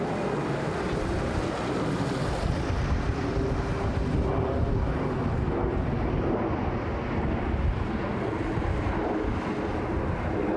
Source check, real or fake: real